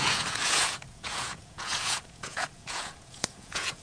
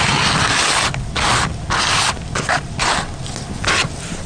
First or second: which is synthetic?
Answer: first